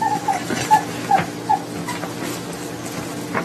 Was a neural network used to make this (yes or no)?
no